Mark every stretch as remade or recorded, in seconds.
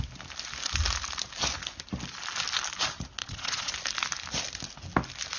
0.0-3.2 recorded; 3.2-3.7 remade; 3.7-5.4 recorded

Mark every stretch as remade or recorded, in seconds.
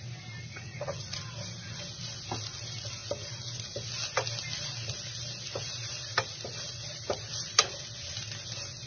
0.0-0.5 recorded; 0.5-1.2 remade; 1.2-8.9 recorded